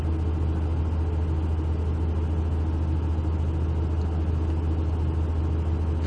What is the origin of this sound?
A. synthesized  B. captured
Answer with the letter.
B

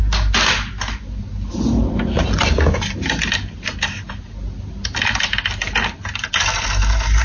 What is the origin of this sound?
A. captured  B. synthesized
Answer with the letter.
A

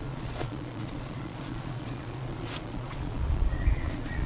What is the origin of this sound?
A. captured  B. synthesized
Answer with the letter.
B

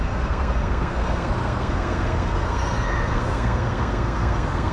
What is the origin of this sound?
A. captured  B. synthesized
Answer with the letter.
B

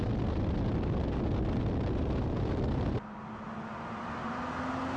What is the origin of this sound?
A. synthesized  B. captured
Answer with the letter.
B